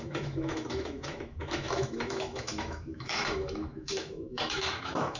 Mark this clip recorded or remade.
remade